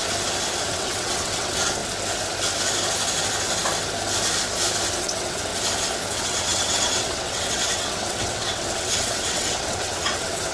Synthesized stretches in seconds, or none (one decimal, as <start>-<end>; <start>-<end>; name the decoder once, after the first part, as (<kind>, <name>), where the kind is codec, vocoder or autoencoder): 0.7-1.8 (vocoder, WaveNeXt); 5.0-5.5; 6.1-10.5